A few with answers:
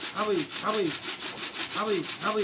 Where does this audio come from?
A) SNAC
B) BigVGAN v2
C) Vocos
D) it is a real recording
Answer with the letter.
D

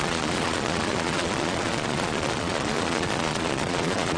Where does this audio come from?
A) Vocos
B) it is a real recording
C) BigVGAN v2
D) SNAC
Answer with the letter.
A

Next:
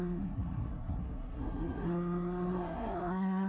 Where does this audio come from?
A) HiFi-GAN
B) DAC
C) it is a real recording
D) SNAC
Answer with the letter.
D